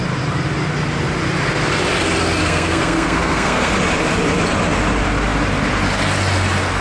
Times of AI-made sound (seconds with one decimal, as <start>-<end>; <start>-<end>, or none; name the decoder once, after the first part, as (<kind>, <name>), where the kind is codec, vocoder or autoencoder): 2.4-3.7 (codec, SNAC)